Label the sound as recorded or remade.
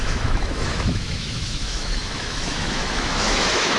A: remade